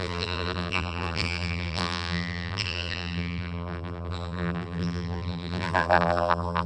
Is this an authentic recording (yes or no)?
no